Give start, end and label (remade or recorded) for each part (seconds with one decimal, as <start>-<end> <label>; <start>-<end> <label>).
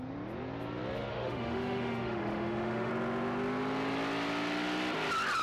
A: 0.0-1.1 recorded; 1.1-2.9 remade; 2.9-5.4 recorded